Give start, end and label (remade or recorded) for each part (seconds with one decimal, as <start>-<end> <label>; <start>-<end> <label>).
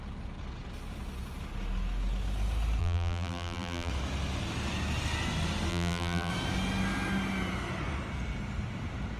0.0-2.8 recorded; 2.8-3.9 remade; 3.9-5.7 recorded; 5.7-6.3 remade; 6.3-9.2 recorded